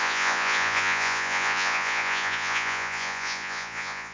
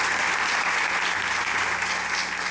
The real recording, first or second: second